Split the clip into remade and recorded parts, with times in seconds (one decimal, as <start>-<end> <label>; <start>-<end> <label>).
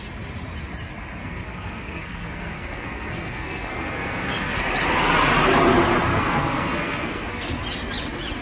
0.0-1.2 recorded; 1.2-4.6 remade; 4.6-6.1 recorded; 6.1-7.6 remade; 7.6-8.4 recorded